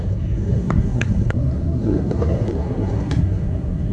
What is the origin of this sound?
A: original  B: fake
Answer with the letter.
B